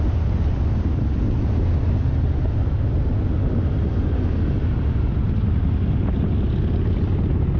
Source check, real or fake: real